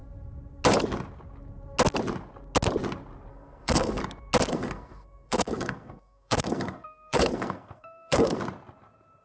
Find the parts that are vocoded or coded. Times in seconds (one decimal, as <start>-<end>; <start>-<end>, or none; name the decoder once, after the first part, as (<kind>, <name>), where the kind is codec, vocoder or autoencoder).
3.3-4.0 (codec, SNAC); 4.5-8.4